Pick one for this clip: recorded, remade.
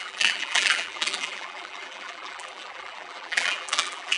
remade